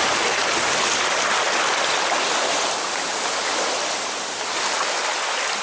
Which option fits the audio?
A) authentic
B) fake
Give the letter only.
A